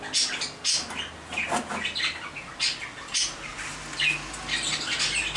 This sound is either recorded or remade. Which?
recorded